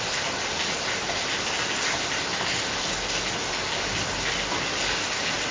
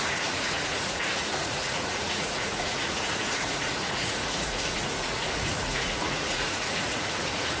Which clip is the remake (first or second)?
second